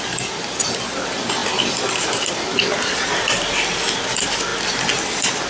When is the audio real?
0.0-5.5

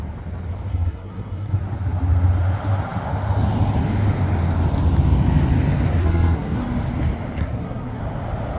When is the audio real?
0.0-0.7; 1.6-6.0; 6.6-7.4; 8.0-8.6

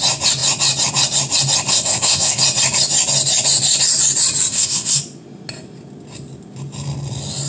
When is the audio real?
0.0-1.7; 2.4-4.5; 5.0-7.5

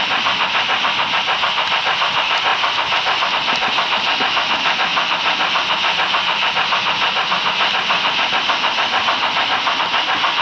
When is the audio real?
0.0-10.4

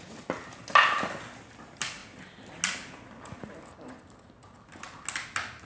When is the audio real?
0.0-5.6

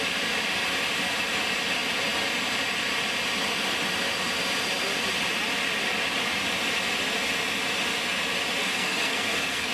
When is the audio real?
0.0-8.6